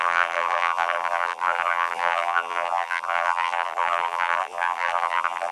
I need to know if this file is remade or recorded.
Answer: remade